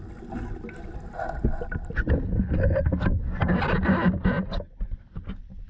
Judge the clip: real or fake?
real